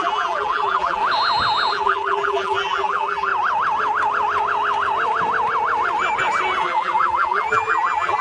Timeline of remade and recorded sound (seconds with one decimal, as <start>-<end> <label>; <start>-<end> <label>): 0.0-1.0 remade; 1.0-1.7 recorded; 1.7-3.3 remade; 3.3-6.6 recorded; 6.6-8.2 remade